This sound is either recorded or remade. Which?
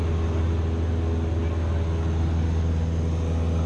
recorded